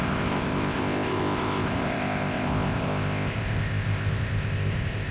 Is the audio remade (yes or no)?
yes